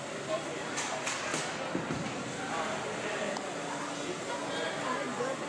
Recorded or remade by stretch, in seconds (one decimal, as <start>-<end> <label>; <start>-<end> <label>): 0.0-5.5 recorded